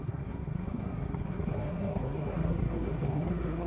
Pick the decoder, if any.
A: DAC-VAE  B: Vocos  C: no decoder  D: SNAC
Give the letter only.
D